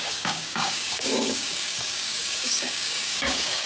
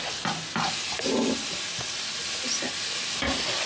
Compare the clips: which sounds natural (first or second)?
second